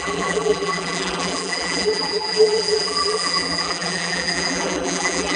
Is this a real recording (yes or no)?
no